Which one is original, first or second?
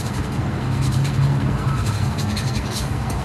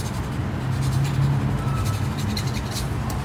second